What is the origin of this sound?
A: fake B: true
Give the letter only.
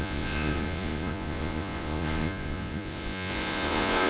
A